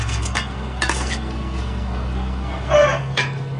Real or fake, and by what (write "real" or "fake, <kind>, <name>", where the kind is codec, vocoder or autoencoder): fake, codec, SNAC